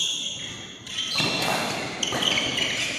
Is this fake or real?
real